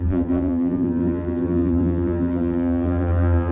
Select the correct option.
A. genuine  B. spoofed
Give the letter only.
B